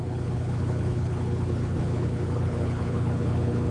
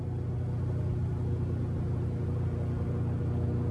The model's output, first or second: first